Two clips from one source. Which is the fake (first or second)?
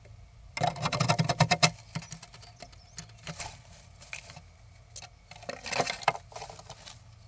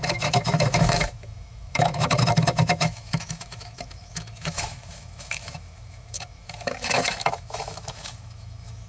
second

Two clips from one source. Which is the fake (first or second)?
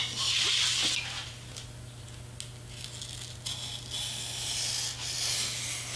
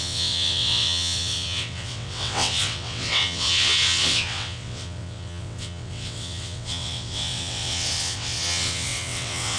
second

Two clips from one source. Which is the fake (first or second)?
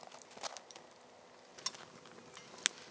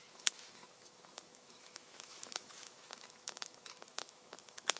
second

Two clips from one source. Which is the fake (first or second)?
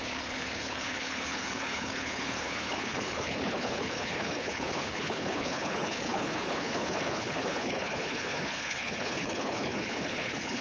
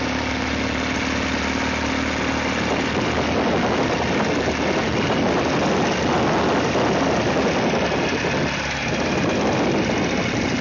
first